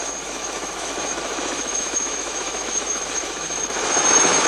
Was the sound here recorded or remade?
remade